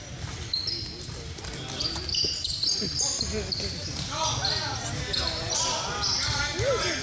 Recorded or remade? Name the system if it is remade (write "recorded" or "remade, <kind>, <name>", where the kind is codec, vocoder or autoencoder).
recorded